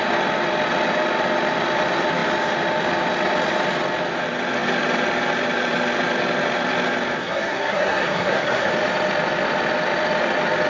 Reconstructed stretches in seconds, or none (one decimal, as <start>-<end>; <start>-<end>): 7.2-8.7